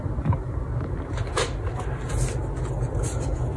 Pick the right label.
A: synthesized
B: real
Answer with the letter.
B